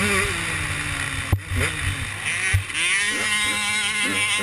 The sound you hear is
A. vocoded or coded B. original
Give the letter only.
B